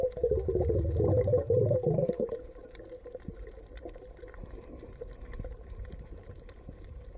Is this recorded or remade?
remade